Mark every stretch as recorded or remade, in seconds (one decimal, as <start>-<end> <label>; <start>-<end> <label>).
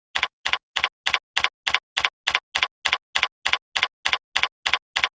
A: 0.0-5.2 recorded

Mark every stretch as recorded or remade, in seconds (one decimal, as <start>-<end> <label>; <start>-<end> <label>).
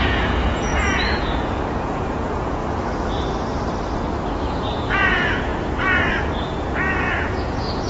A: 0.0-2.6 remade; 2.6-4.4 recorded; 4.4-5.5 remade; 5.5-6.1 recorded; 6.1-7.9 remade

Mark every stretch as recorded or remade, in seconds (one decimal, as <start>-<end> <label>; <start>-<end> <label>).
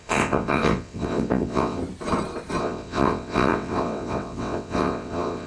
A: 0.0-1.8 remade; 1.8-2.6 recorded; 2.6-5.5 remade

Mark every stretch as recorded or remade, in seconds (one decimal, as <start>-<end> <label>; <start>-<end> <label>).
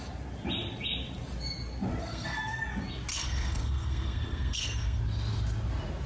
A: 0.0-2.0 recorded; 2.0-2.6 remade; 2.6-3.1 recorded; 3.1-5.0 remade; 5.0-6.1 recorded